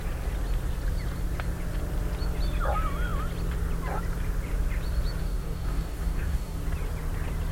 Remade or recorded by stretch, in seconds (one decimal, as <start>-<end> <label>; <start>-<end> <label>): 0.0-5.2 recorded; 5.2-6.6 remade; 6.6-7.5 recorded